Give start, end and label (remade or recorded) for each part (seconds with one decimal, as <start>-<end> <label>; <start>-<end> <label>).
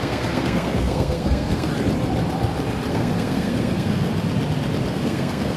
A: 0.0-1.7 remade; 1.7-2.9 recorded; 2.9-4.1 remade; 4.1-4.9 recorded; 4.9-5.6 remade